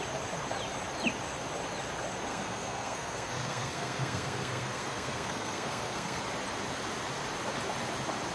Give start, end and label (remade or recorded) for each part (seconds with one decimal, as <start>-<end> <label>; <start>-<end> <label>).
0.0-2.3 recorded; 2.3-6.2 remade; 6.2-8.3 recorded